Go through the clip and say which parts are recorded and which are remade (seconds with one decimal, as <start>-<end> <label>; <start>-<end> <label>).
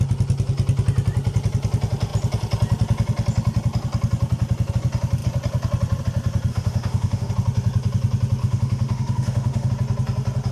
0.0-6.5 recorded; 6.5-7.3 remade; 7.3-8.4 recorded; 8.4-9.7 remade; 9.7-10.5 recorded